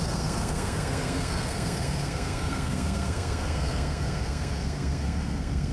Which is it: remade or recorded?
remade